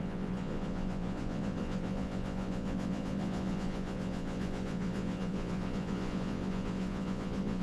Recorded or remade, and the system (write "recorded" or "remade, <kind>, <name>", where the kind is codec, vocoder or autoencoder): remade, vocoder, Vocos